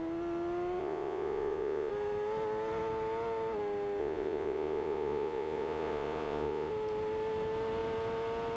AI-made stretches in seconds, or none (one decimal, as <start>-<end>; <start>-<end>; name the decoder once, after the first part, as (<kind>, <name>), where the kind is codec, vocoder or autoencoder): 0.8-1.9 (vocoder, Vocos); 4.0-6.7